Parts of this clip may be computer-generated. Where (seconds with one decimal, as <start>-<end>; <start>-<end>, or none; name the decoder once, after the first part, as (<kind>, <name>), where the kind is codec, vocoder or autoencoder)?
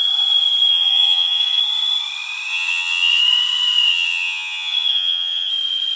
0.7-1.6 (vocoder, HiFi-GAN); 2.5-3.2; 3.9-5.5